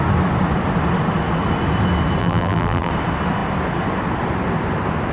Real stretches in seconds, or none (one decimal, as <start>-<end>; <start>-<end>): 0.0-2.2; 2.9-5.1